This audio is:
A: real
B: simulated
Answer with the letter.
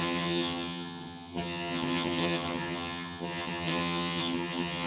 B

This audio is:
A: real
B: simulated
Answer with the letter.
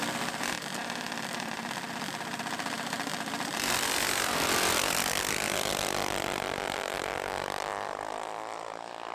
B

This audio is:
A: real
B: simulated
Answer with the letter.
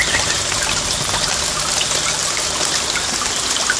A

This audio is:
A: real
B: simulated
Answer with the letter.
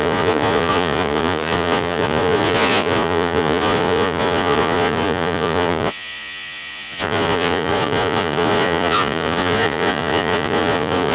B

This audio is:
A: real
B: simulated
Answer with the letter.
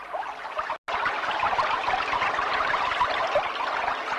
A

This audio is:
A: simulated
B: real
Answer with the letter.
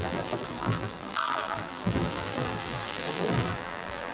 A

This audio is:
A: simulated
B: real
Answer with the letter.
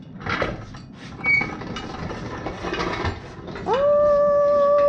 B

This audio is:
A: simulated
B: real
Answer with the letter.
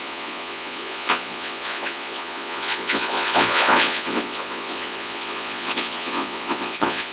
A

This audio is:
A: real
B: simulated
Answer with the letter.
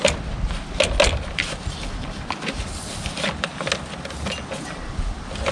A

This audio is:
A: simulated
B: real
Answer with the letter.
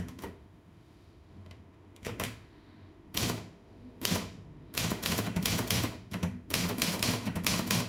A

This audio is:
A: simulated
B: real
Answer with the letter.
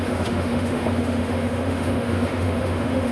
A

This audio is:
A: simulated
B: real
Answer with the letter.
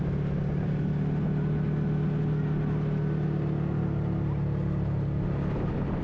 B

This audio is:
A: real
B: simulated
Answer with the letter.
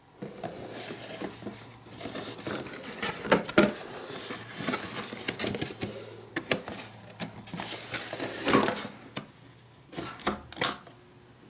A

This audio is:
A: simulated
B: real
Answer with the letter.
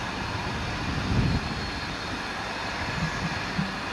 B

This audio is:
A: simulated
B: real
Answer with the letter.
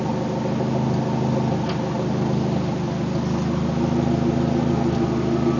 B